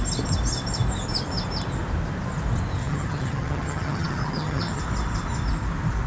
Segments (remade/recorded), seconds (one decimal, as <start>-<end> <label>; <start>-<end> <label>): 0.0-2.8 recorded; 2.8-4.8 remade; 4.8-6.1 recorded

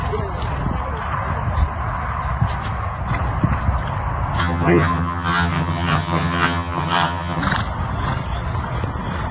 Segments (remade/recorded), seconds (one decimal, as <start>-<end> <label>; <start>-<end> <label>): 0.0-4.4 recorded; 4.4-7.4 remade; 7.4-9.3 recorded

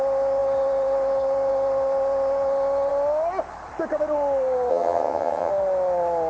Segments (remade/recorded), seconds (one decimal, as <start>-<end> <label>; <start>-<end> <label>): 0.0-4.7 recorded; 4.7-5.5 remade; 5.5-6.3 recorded

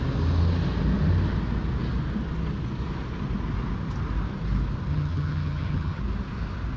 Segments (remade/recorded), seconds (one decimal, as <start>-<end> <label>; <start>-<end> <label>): 0.0-4.9 recorded; 4.9-6.0 remade; 6.0-6.8 recorded